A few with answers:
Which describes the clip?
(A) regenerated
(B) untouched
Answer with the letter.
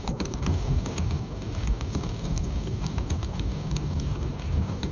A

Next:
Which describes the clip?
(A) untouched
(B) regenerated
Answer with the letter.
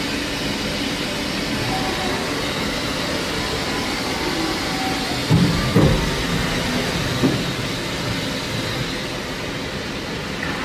A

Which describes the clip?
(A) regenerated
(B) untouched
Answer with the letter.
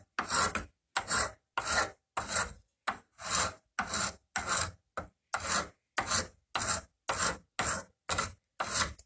B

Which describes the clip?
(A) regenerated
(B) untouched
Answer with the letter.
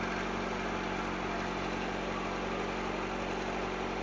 B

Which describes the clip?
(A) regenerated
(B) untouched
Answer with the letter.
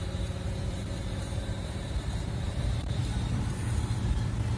A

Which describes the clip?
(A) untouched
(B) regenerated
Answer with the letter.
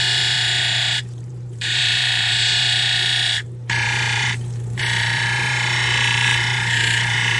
B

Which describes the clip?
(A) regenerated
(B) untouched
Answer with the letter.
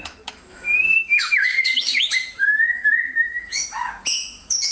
A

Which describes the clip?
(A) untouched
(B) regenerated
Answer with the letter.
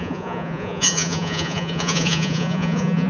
B